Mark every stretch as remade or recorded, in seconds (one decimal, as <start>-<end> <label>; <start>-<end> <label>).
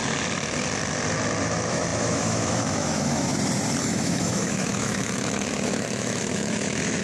0.0-1.4 recorded; 1.4-3.3 remade; 3.3-3.8 recorded; 3.8-7.0 remade